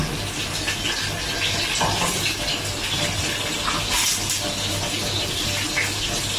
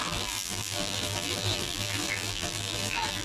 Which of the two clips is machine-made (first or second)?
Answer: second